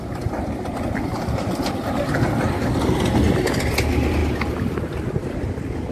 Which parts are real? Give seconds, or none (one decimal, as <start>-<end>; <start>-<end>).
0.0-1.1; 2.0-5.9